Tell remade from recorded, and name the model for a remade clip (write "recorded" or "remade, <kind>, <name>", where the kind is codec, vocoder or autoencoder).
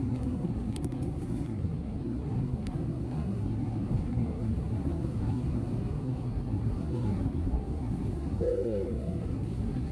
remade, codec, SNAC